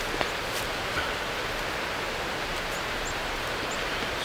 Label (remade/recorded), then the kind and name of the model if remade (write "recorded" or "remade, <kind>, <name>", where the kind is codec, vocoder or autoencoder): recorded